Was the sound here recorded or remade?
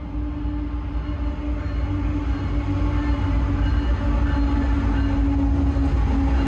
recorded